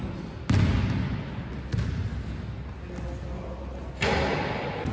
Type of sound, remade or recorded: recorded